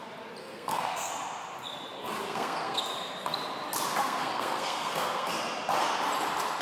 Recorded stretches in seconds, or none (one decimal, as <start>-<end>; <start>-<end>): 0.0-0.4; 1.1-2.2; 2.8-4.0; 5.3-6.6